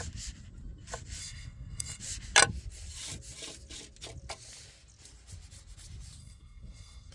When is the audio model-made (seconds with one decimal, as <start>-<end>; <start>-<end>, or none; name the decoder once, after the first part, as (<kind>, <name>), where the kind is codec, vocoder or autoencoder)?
1.2-2.0 (codec, SNAC); 6.2-7.1

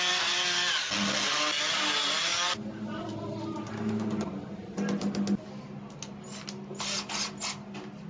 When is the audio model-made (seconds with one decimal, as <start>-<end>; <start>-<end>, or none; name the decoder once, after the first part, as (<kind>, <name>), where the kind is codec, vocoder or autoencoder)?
none

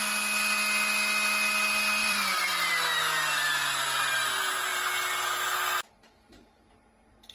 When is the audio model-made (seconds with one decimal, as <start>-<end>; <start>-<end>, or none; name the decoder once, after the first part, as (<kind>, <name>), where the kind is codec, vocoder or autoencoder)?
2.0-2.7 (vocoder, BigVGAN v2)

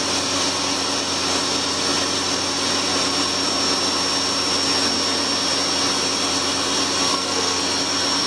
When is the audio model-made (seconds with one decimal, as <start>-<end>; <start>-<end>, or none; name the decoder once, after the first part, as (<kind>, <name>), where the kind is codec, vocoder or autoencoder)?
7.1-7.6 (codec, SNAC)

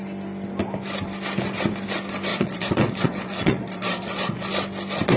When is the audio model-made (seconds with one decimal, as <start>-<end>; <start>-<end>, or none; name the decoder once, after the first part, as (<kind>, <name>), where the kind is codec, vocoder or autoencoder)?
2.3-4.5 (vocoder, Vocos)

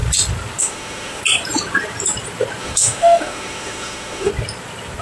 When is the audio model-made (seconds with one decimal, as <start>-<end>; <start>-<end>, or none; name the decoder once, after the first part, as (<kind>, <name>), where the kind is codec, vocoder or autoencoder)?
0.6-1.2 (autoencoder, DAC-VAE); 2.6-4.3

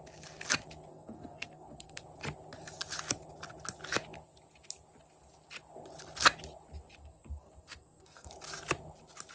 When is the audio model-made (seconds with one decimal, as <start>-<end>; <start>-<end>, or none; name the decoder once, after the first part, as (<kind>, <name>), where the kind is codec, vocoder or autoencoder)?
0.9-2.0 (codec, SNAC); 7.0-8.3